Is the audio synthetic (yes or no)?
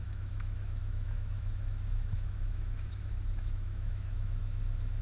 yes